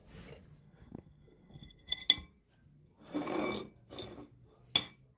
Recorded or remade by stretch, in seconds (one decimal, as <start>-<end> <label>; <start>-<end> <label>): 0.0-0.6 recorded; 0.6-2.0 remade; 2.0-5.2 recorded